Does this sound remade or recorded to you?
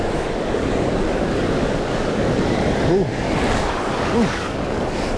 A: remade